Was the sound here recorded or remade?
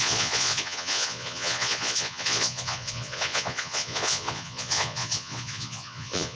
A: remade